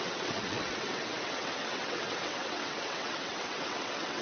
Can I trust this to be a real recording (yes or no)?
no